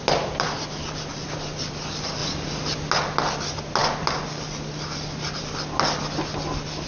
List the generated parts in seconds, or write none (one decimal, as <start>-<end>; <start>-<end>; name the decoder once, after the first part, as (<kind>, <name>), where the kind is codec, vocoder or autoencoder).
none